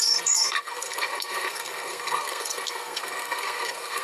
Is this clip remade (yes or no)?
yes